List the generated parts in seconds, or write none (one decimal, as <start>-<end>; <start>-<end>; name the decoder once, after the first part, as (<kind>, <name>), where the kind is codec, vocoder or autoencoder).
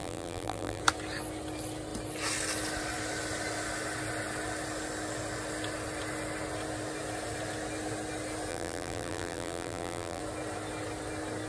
0.0-0.8 (vocoder, BigVGAN v2); 8.5-10.2